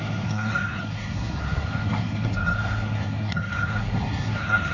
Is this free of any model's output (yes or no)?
no